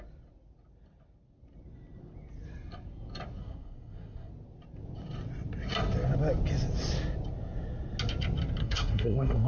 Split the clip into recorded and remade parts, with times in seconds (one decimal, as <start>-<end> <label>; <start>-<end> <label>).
0.0-3.4 recorded; 3.4-4.3 remade; 4.3-8.6 recorded; 8.6-9.5 remade